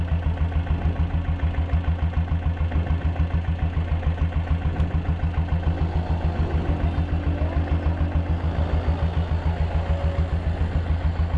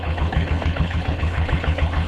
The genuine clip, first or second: first